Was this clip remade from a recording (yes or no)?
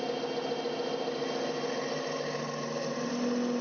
no